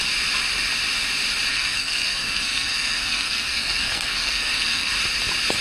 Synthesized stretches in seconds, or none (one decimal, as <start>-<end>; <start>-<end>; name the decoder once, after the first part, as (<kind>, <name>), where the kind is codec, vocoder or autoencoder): 1.5-4.9 (codec, SNAC)